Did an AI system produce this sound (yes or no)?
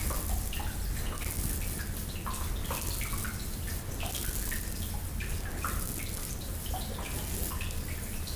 no